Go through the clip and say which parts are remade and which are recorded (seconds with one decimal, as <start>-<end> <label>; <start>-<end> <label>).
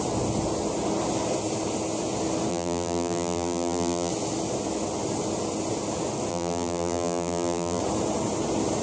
0.0-2.5 recorded; 2.5-4.1 remade; 4.1-6.3 recorded; 6.3-7.8 remade; 7.8-8.8 recorded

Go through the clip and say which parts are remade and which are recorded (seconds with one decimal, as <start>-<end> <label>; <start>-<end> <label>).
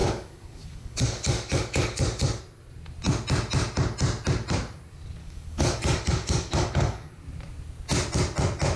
0.0-2.4 remade; 2.4-5.2 recorded; 5.2-7.1 remade; 7.1-8.8 recorded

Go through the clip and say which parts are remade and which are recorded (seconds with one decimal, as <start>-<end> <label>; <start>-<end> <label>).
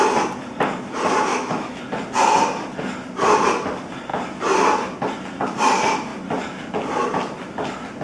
0.0-1.3 recorded; 1.3-1.8 remade; 1.8-8.0 recorded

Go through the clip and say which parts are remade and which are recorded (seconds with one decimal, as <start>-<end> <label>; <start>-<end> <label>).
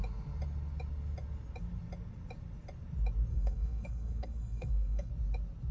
0.0-3.3 recorded; 3.3-5.1 remade; 5.1-5.7 recorded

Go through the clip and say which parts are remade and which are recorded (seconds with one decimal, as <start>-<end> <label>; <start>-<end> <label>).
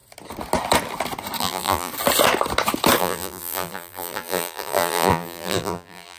0.0-1.4 recorded; 1.4-1.9 remade; 1.9-3.0 recorded; 3.0-6.2 remade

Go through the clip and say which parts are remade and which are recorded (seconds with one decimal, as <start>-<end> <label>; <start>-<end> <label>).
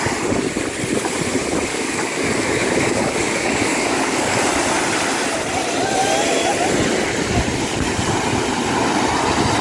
0.0-1.7 recorded; 1.7-4.4 remade; 4.4-9.6 recorded